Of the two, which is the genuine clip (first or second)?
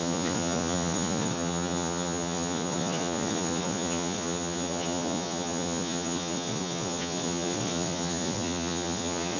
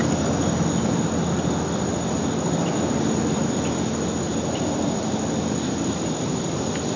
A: second